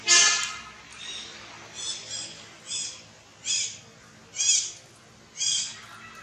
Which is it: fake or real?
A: real